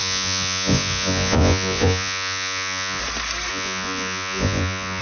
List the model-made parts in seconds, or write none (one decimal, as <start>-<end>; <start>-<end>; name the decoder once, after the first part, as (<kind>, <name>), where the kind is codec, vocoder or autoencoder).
0.0-3.0 (vocoder, Vocos); 3.5-5.0